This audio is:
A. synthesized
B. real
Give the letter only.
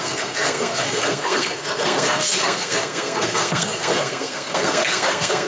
A